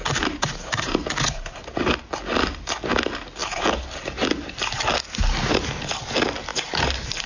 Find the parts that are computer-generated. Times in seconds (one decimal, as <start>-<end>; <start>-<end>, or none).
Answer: 0.0-1.0; 6.5-7.3